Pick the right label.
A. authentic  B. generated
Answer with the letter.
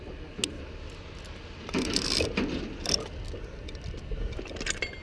A